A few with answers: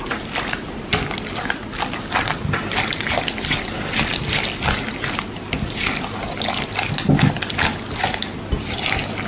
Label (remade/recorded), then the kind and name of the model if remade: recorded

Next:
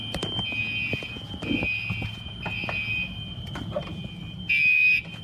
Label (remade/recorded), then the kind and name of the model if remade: recorded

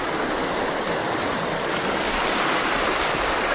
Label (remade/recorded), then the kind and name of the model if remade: recorded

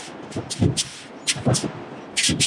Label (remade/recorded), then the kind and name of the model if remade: recorded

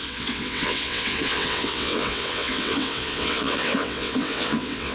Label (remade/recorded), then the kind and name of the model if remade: remade, vocoder, WaveNeXt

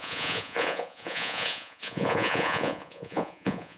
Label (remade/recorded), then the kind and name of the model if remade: remade, vocoder, Vocos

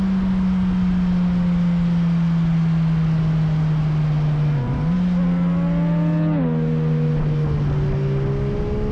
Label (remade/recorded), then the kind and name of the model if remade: recorded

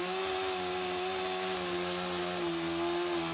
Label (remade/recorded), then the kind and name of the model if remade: recorded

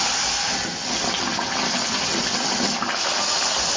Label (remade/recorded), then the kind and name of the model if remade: recorded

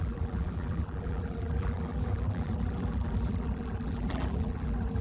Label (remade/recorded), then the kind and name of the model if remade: remade, vocoder, BigVGAN v2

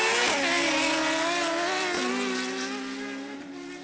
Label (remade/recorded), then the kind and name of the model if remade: recorded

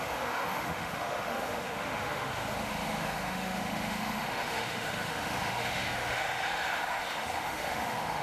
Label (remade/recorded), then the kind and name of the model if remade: remade, autoencoder, DAC-VAE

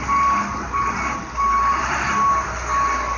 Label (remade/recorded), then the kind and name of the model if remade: recorded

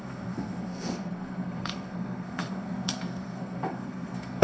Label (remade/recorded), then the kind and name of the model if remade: remade, codec, SNAC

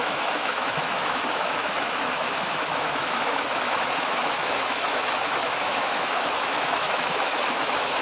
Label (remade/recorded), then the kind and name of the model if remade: remade, autoencoder, DAC-VAE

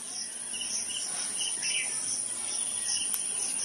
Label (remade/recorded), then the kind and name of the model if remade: recorded